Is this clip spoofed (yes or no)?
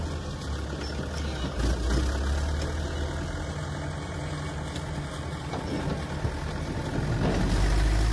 no